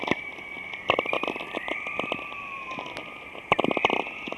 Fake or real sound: real